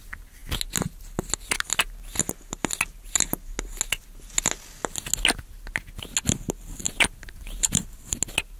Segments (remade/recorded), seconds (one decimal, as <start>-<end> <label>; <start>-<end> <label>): 0.0-6.8 recorded; 6.8-8.1 remade; 8.1-8.6 recorded